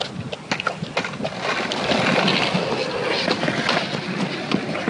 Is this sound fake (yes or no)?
no